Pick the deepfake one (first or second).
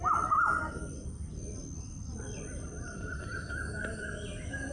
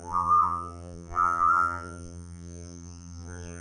second